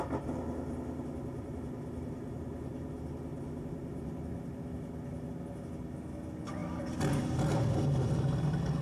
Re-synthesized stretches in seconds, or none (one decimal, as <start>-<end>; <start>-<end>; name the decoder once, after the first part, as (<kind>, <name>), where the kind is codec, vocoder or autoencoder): none